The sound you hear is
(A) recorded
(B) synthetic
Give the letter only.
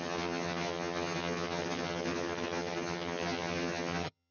B